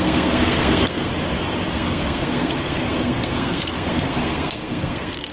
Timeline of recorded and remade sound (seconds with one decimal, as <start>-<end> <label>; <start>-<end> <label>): 0.0-1.1 remade; 1.1-1.7 recorded; 1.7-5.3 remade